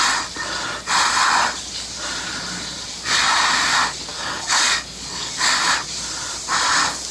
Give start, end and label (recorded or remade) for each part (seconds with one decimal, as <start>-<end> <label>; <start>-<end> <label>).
0.0-4.1 recorded; 4.1-5.6 remade; 5.6-7.1 recorded